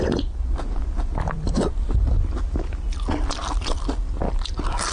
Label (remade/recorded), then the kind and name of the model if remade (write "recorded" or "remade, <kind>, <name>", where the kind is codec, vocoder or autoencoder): recorded